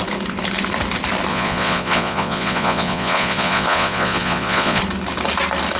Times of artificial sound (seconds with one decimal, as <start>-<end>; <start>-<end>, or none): 1.3-4.8